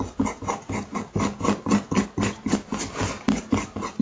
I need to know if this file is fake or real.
real